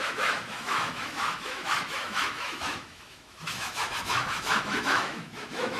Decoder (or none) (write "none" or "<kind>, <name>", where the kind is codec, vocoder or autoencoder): autoencoder, DAC-VAE